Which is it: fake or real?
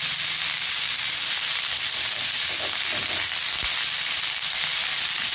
real